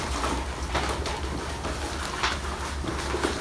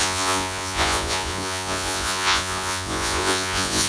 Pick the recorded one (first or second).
first